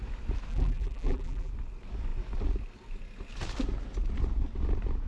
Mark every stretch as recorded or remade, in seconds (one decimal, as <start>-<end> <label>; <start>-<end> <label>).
0.0-0.5 recorded; 0.5-1.5 remade; 1.5-5.1 recorded